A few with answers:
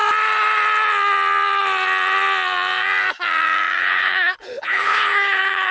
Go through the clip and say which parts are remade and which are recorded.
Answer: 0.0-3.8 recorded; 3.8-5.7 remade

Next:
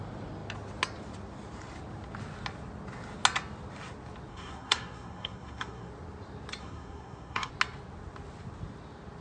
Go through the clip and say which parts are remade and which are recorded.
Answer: 0.0-4.3 recorded; 4.3-5.9 remade; 5.9-6.6 recorded; 6.6-7.5 remade; 7.5-9.2 recorded

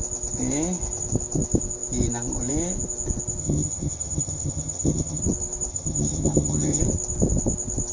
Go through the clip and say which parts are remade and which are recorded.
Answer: 0.0-3.4 recorded; 3.4-5.2 remade; 5.2-5.7 recorded; 5.7-6.8 remade; 6.8-7.9 recorded